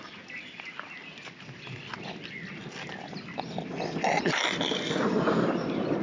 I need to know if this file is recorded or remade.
recorded